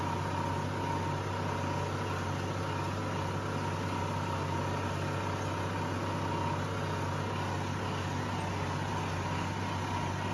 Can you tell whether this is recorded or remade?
recorded